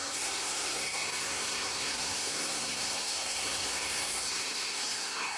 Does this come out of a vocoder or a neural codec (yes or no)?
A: yes